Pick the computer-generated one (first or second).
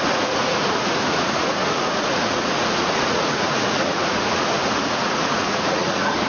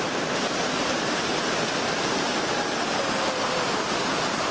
first